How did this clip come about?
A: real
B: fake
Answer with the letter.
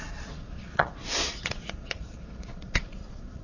B